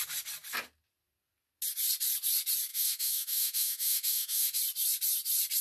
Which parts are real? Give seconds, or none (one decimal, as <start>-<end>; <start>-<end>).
0.0-2.7; 4.6-5.6